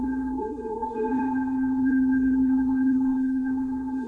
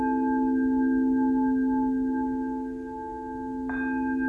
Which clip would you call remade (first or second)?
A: first